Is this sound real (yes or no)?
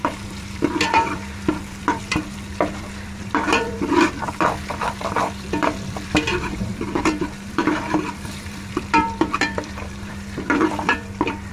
no